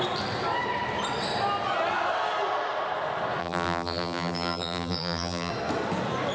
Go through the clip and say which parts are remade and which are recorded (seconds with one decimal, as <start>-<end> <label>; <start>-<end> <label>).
0.0-3.4 recorded; 3.4-5.5 remade; 5.5-6.3 recorded